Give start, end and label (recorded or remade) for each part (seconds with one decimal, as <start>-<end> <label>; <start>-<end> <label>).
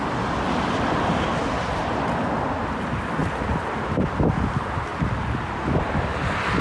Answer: 0.0-3.2 recorded; 3.2-4.1 remade; 4.1-6.6 recorded